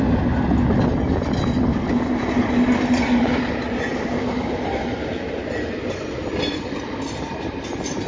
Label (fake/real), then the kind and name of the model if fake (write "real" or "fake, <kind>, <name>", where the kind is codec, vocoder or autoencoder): real